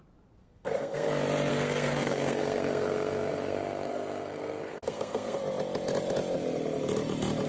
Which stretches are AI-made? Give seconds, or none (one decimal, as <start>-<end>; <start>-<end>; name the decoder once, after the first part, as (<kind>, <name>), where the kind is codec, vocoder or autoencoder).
0.4-1.1 (codec, SNAC); 1.5-5.4